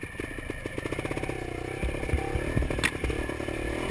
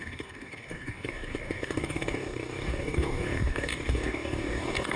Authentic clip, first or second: first